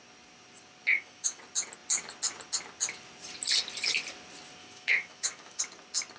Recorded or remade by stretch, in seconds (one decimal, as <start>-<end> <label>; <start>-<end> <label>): 0.0-0.9 recorded; 0.9-1.4 remade; 1.4-4.6 recorded; 4.6-5.6 remade; 5.6-6.2 recorded